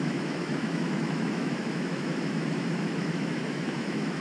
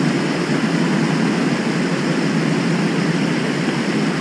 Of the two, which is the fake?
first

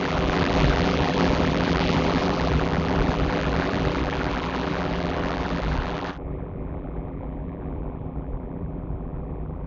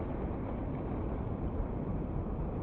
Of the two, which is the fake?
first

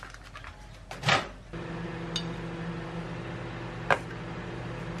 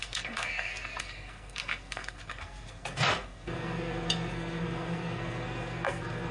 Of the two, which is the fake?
second